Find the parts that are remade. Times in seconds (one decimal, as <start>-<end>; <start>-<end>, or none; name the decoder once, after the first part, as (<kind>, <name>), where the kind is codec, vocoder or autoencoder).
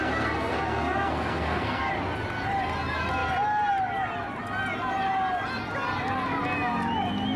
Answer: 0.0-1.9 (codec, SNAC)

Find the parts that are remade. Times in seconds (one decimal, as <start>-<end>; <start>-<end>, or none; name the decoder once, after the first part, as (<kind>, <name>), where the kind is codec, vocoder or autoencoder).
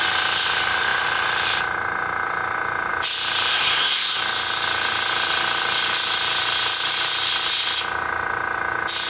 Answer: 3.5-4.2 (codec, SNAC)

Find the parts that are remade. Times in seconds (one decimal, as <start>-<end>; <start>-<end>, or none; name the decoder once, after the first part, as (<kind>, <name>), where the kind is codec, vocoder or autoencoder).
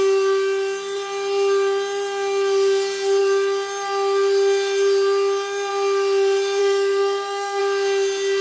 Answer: 6.6-7.6 (codec, SNAC)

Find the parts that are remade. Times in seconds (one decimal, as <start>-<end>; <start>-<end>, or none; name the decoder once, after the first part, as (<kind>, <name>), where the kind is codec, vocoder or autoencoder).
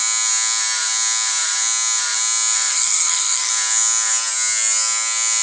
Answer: 2.7-3.5 (codec, SNAC)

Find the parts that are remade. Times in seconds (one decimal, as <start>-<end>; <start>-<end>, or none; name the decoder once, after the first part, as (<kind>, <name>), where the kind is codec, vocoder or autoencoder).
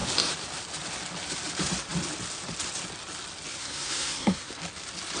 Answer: 3.5-4.5 (codec, SNAC)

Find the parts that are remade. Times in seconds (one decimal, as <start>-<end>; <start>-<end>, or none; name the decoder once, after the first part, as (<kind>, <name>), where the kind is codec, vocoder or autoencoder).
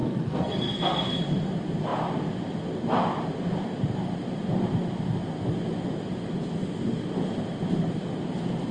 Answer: 0.0-1.2 (codec, SNAC)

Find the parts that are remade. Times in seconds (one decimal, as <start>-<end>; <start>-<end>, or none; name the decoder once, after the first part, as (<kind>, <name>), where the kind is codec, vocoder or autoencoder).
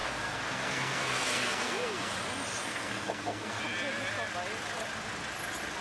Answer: 0.0-2.1 (codec, SNAC); 2.6-3.6